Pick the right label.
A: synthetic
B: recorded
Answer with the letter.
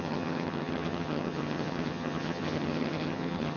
A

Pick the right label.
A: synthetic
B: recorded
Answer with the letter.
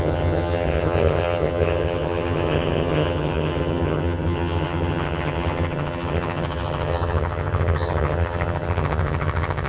A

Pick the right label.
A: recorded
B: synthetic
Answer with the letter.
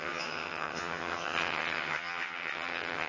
B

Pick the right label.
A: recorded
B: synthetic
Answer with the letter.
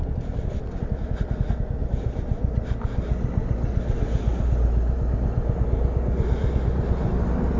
A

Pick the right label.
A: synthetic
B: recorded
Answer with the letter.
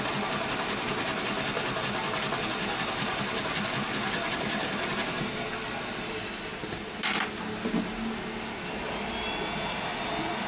B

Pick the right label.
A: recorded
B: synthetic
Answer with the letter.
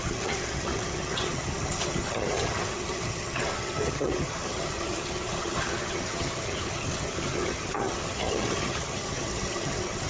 B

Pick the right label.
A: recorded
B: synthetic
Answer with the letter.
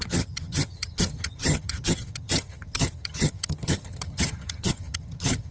B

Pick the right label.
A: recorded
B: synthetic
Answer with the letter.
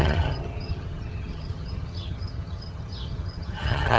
B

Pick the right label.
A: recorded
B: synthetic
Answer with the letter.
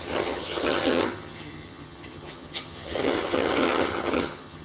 B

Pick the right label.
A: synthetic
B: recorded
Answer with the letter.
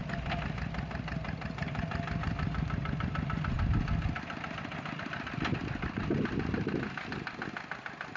B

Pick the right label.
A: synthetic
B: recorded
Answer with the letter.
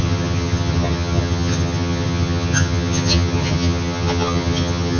A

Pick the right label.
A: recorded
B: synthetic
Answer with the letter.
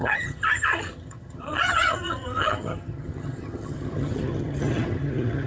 B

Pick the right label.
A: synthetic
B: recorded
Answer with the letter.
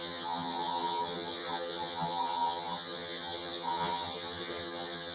A